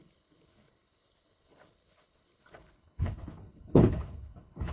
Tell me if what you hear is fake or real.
fake